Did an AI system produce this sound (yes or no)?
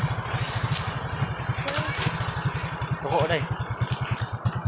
no